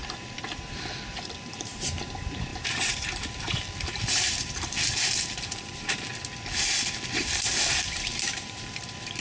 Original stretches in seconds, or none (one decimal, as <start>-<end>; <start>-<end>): 0.0-1.1; 6.1-7.2